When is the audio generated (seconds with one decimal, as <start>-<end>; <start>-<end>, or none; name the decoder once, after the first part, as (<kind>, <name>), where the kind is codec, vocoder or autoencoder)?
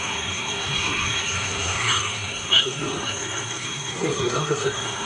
0.0-5.1 (codec, SNAC)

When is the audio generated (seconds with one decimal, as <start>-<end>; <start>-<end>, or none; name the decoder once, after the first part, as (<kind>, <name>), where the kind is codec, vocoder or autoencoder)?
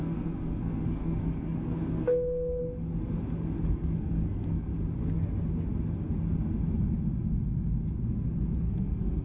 0.0-2.6 (codec, SNAC); 3.7-4.7; 8.6-9.2